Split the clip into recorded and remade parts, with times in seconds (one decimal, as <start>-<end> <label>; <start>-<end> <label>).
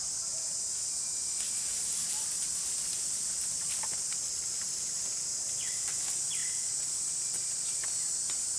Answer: 0.0-8.6 recorded